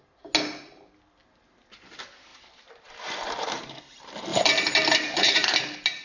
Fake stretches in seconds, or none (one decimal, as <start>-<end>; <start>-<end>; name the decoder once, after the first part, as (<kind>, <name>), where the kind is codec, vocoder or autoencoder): 2.3-3.8 (vocoder, BigVGAN v2); 4.3-5.6